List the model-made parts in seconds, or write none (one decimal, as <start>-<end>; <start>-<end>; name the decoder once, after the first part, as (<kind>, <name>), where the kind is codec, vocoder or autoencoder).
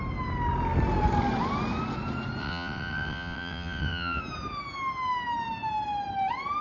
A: 2.4-4.2 (vocoder, WaveNeXt)